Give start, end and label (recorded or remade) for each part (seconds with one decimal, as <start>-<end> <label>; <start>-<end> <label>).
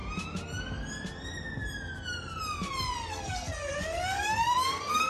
0.0-3.1 recorded; 3.1-5.1 remade